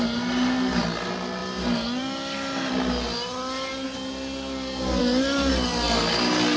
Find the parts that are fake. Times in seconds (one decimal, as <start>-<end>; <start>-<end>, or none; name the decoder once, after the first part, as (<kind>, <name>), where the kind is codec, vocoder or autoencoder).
none